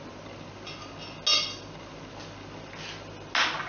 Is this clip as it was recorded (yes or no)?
yes